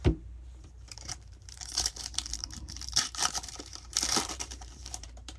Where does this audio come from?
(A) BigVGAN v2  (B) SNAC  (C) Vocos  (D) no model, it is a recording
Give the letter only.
A